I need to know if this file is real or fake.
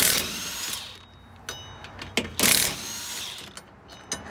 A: real